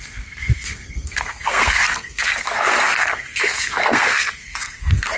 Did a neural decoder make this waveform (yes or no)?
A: yes